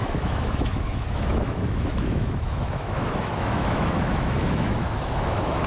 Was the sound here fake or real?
fake